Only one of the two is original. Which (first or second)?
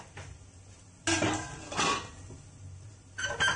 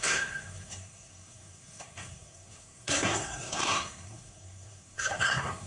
first